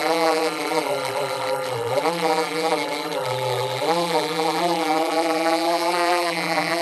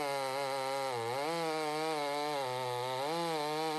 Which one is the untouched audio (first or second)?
second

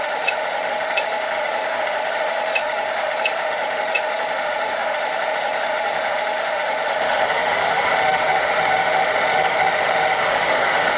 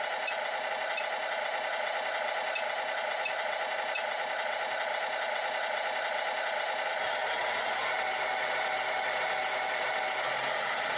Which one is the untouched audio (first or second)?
second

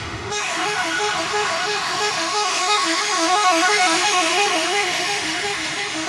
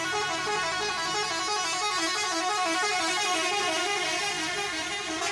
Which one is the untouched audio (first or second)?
second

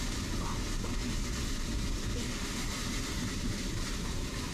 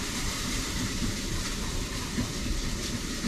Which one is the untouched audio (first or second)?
first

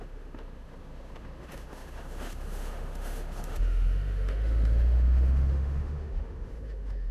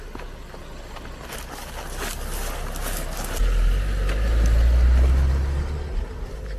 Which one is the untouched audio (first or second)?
second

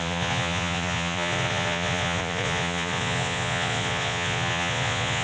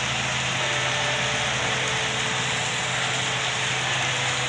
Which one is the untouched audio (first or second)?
second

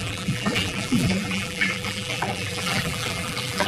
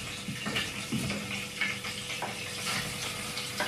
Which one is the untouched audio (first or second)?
second